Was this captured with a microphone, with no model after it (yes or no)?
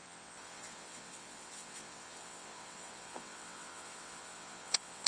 no